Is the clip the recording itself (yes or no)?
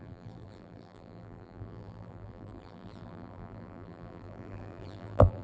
no